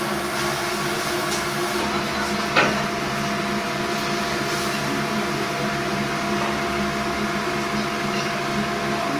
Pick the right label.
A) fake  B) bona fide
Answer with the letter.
B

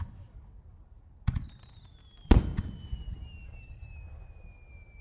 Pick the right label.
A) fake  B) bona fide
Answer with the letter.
B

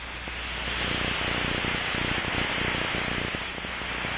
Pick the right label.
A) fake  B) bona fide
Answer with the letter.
B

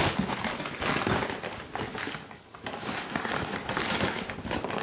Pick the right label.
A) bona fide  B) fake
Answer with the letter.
A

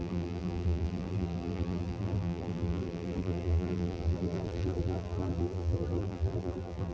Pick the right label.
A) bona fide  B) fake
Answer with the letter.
B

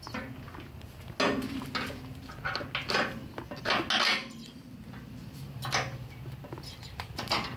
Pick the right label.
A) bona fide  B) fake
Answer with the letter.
A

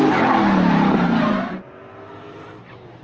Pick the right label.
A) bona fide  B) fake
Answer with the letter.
B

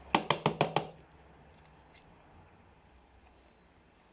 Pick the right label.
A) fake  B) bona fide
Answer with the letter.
B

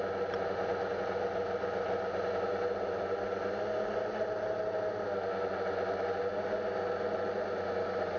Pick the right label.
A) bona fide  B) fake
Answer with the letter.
A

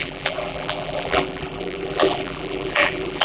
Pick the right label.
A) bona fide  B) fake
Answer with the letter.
B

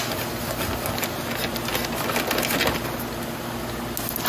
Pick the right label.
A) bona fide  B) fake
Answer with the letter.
A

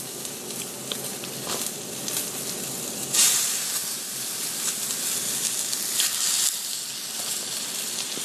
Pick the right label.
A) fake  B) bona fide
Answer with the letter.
B